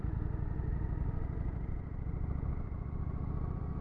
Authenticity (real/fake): real